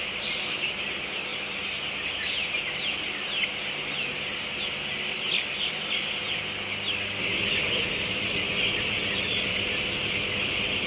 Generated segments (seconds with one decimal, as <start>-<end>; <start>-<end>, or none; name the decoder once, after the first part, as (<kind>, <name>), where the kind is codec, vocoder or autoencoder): none